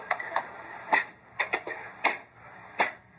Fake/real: real